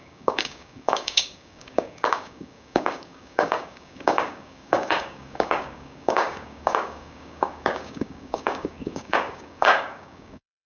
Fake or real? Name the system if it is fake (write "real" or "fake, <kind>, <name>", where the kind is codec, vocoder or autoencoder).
fake, codec, DAC